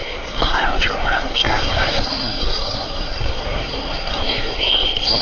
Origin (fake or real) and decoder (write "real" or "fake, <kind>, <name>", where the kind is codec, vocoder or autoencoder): fake, codec, SNAC